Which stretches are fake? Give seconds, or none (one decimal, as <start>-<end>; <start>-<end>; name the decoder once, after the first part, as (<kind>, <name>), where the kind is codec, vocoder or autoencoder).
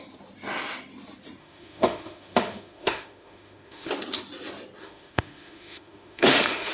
1.4-3.9 (autoencoder, DAC-VAE); 4.8-6.7